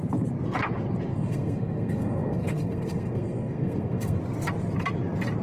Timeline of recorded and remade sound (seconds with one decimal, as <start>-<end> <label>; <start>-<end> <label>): 0.0-1.1 recorded; 1.1-4.2 remade; 4.2-5.4 recorded